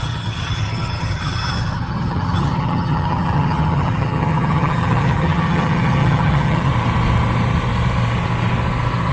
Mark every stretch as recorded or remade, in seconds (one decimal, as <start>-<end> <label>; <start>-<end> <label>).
0.0-6.7 remade; 6.7-9.1 recorded